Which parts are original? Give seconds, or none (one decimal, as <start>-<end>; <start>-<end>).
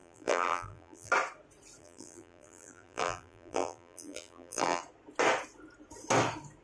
1.1-1.8; 4.8-6.6